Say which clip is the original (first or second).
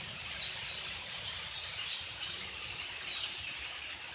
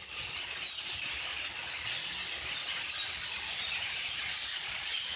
second